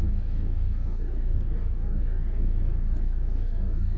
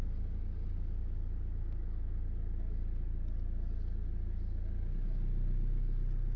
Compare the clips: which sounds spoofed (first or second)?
first